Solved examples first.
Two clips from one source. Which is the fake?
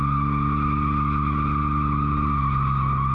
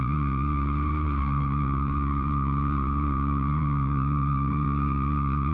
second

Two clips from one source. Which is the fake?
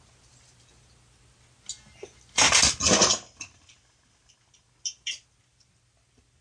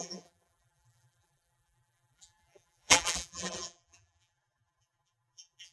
second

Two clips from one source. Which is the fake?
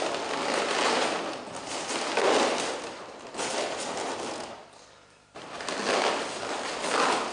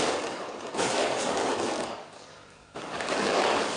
second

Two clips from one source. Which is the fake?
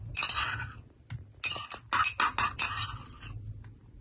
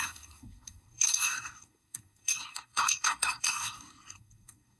second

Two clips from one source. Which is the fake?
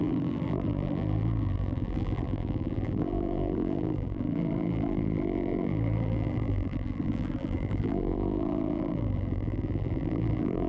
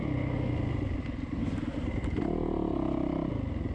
first